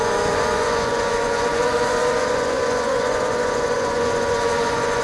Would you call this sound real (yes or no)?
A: no